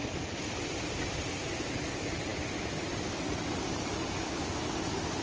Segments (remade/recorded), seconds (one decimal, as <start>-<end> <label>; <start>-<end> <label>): 0.0-5.2 recorded